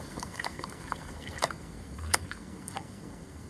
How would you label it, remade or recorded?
remade